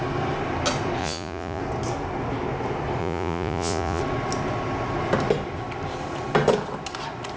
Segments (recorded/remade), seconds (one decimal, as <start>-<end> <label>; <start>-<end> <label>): 0.0-1.0 recorded; 1.0-1.6 remade; 1.6-3.0 recorded; 3.0-4.0 remade; 4.0-7.4 recorded